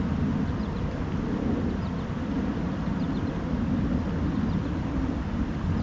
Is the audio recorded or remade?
recorded